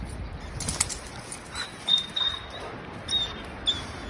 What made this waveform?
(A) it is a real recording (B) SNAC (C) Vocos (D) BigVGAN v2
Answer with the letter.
A